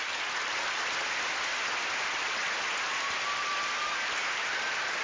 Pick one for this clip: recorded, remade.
recorded